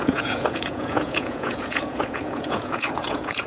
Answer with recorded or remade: remade